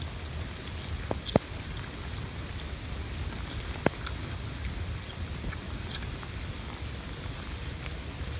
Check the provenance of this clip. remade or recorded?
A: recorded